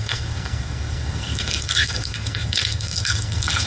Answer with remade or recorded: remade